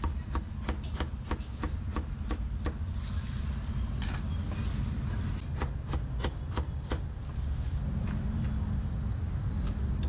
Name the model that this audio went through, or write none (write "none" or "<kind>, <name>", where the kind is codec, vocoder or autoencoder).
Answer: none